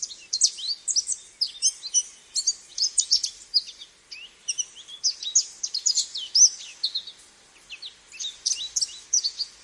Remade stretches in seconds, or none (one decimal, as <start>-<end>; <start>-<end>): 2.7-3.3